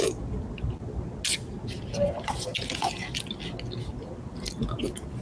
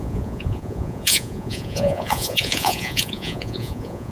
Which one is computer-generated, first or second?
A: second